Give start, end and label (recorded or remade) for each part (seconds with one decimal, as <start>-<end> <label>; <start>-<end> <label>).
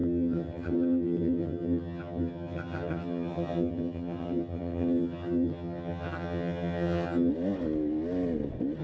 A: 0.0-7.3 remade; 7.3-8.8 recorded